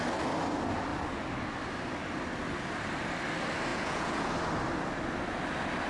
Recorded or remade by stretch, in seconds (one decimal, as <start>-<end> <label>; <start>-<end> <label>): 0.0-3.7 recorded; 3.7-4.3 remade; 4.3-5.9 recorded